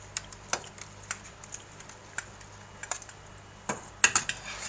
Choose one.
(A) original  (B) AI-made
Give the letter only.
A